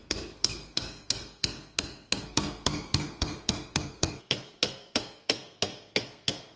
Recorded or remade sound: remade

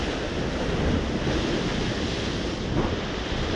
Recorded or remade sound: recorded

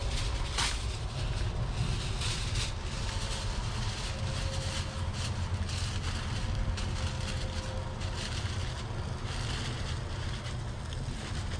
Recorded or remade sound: recorded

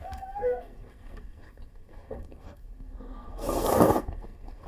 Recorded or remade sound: remade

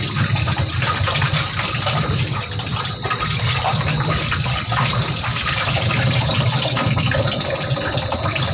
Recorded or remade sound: recorded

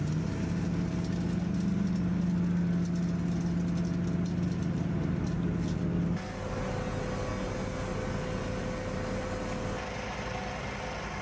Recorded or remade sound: recorded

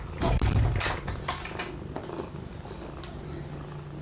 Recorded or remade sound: recorded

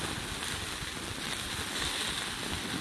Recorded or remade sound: recorded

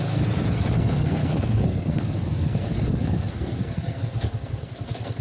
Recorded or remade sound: remade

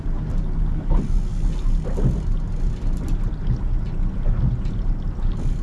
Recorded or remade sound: recorded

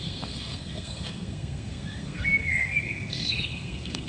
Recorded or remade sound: remade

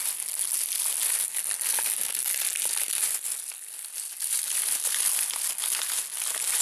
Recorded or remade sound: recorded